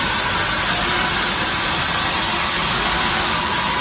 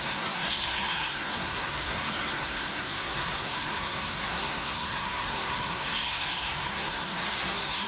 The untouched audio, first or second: first